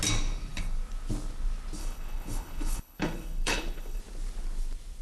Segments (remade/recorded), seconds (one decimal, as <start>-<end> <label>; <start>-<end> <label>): 0.0-1.8 recorded; 1.8-4.0 remade; 4.0-5.0 recorded